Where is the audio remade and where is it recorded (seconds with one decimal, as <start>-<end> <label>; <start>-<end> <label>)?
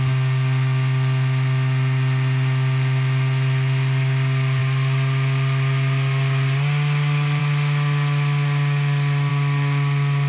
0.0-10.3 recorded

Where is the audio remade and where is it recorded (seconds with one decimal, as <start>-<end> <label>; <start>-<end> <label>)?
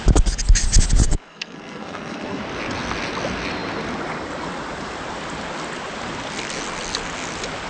0.0-1.0 recorded; 1.0-2.4 remade; 2.4-7.7 recorded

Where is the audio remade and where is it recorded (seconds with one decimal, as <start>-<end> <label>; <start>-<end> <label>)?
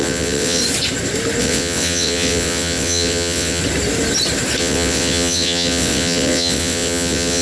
0.0-0.6 remade; 0.6-1.4 recorded; 1.4-3.6 remade; 3.6-4.6 recorded; 4.6-7.4 remade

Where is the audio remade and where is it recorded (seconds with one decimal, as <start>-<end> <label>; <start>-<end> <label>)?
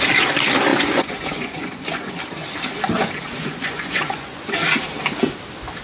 0.0-0.7 recorded; 0.7-2.1 remade; 2.1-3.2 recorded; 3.2-4.5 remade; 4.5-5.8 recorded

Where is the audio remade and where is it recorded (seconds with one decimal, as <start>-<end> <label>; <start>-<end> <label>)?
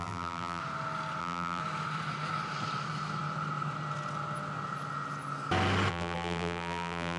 0.0-0.6 remade; 0.6-1.2 recorded; 1.2-1.6 remade; 1.6-5.9 recorded; 5.9-7.2 remade